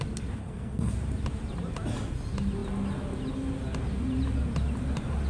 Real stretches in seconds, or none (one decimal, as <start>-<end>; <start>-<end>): 0.0-0.4; 0.9-5.3